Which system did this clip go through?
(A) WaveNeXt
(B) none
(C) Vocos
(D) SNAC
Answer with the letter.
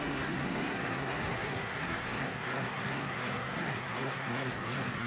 D